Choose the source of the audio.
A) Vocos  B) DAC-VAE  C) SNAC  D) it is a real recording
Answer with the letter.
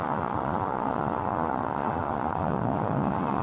A